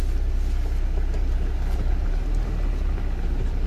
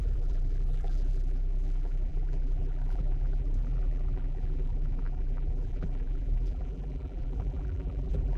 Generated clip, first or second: second